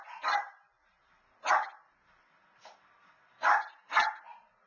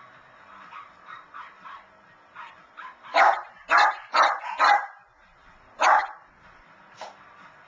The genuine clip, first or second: first